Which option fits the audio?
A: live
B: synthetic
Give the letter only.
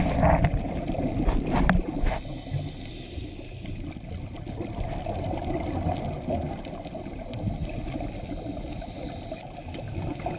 A